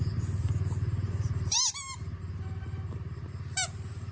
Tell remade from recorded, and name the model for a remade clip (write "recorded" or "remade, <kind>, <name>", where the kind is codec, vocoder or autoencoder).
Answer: recorded